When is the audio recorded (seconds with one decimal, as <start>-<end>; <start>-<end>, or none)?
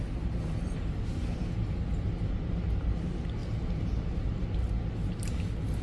0.0-5.8